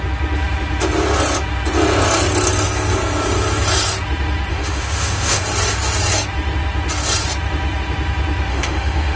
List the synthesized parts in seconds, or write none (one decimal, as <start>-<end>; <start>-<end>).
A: 4.5-5.4; 8.5-9.2